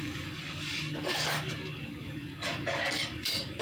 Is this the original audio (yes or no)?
no